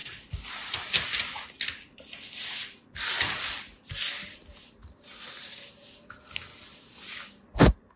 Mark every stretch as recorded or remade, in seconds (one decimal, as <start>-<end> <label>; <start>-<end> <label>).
0.0-8.0 recorded